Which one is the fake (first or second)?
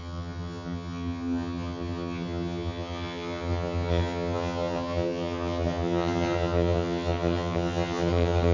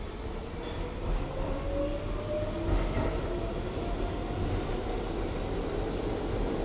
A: first